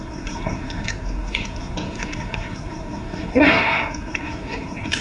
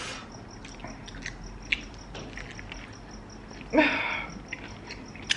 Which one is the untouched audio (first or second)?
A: second